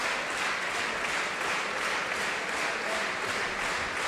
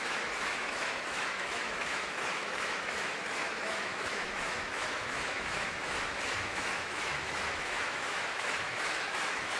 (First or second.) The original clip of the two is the first